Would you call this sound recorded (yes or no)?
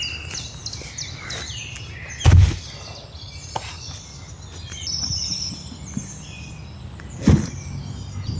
yes